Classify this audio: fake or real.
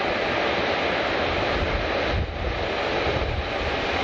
real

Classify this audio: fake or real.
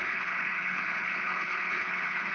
fake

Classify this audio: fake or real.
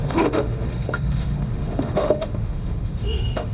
fake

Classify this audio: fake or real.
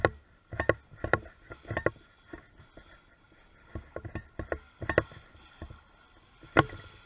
real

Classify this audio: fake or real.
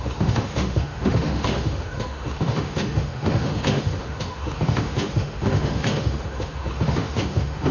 fake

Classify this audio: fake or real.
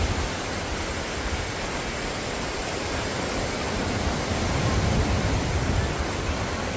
fake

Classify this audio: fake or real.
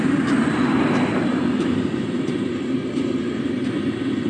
fake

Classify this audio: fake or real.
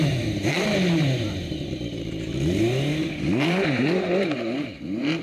fake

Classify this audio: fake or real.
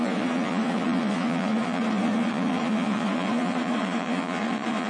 fake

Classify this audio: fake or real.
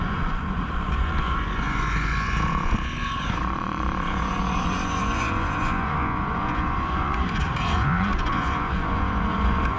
fake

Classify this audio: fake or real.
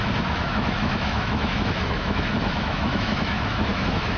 fake